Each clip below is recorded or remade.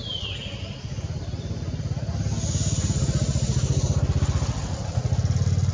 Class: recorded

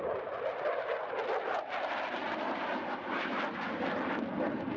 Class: recorded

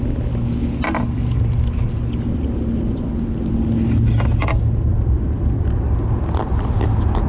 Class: recorded